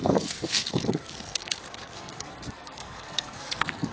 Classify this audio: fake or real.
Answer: fake